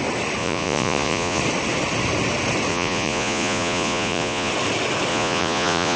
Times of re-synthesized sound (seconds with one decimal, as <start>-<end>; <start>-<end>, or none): 0.4-1.4; 2.7-4.5; 5.1-6.0